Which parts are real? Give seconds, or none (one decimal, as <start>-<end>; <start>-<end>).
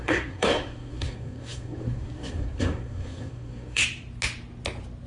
3.8-5.1